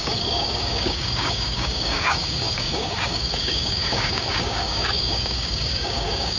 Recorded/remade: remade